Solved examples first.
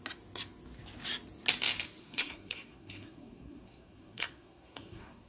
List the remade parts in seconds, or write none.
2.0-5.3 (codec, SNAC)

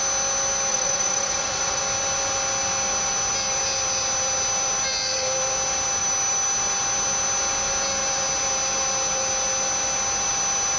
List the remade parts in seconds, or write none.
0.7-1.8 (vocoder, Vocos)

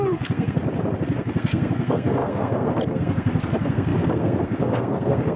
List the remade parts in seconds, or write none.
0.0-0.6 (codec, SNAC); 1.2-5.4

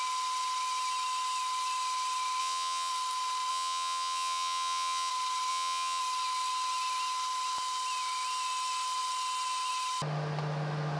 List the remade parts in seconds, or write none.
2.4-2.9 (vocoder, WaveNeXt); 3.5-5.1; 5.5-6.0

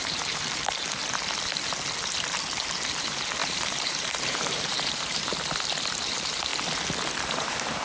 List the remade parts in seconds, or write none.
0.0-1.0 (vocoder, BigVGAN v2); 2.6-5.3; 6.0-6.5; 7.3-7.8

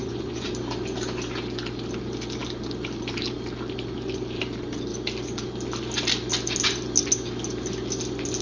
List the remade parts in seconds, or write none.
0.0-0.5 (vocoder, Vocos)